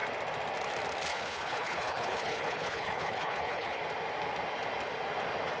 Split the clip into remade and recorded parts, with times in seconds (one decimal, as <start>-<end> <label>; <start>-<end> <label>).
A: 0.0-1.1 recorded; 1.1-3.8 remade; 3.8-5.6 recorded

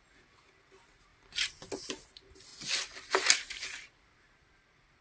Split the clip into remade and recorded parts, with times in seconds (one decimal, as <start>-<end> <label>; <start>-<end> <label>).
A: 0.0-5.0 recorded